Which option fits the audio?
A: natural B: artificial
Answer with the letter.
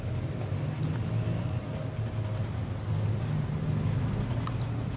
A